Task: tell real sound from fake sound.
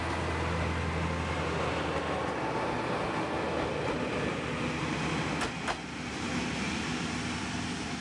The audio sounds real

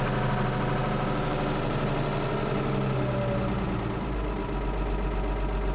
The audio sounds real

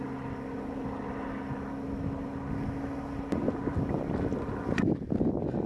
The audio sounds real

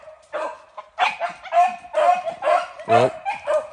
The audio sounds real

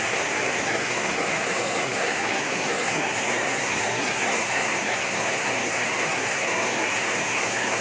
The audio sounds fake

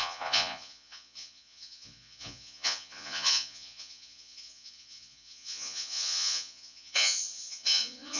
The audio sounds fake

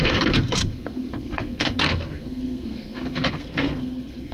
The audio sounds fake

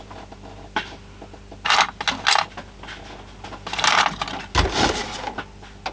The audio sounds real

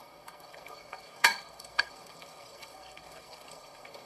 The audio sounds fake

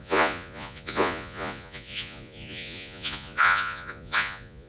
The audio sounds fake